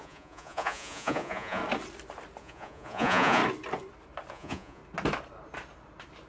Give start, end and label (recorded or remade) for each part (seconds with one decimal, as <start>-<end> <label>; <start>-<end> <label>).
0.0-1.6 remade; 1.6-2.4 recorded; 2.4-3.4 remade; 3.4-4.3 recorded; 4.3-4.8 remade; 4.8-6.3 recorded